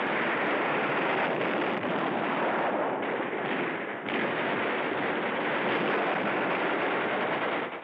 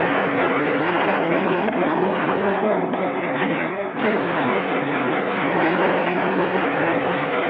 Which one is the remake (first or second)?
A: second